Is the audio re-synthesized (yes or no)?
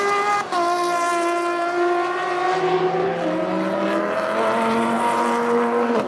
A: no